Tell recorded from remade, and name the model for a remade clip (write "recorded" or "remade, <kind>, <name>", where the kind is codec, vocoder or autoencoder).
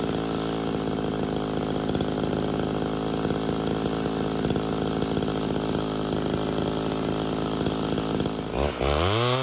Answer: recorded